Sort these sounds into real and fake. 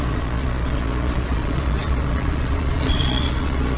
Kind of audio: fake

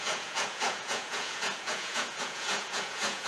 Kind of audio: fake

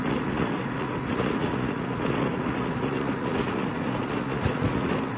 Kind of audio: fake